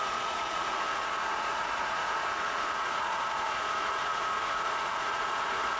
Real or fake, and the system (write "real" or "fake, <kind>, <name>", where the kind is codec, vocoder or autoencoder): fake, vocoder, Vocos